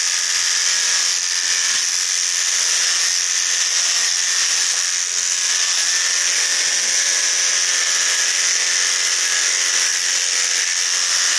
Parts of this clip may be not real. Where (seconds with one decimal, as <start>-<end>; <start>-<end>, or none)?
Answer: none